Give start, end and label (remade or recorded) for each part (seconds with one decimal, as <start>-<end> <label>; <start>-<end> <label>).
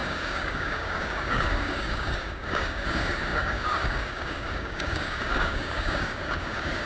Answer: 0.0-6.9 remade